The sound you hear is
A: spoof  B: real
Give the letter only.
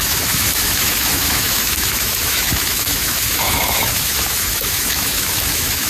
A